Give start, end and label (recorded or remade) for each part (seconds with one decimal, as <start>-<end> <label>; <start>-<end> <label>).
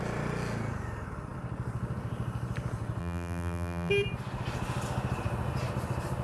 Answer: 0.0-3.0 recorded; 3.0-3.9 remade; 3.9-6.2 recorded